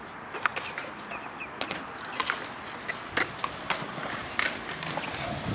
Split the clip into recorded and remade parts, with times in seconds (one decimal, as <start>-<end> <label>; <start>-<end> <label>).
0.0-5.5 recorded